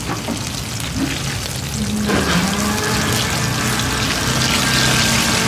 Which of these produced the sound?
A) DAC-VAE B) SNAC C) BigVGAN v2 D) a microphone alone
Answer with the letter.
D